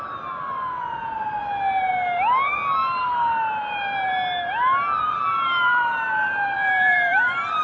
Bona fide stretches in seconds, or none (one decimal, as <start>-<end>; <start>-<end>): 0.0-1.4; 1.9-2.8; 4.1-5.2